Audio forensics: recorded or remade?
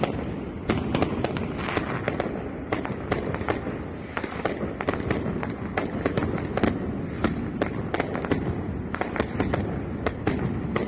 recorded